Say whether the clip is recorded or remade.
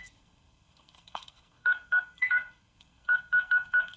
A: remade